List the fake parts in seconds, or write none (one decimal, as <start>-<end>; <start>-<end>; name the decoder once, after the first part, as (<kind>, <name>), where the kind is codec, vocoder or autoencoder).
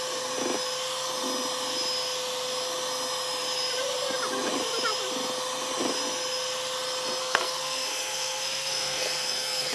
7.2-9.7 (codec, SNAC)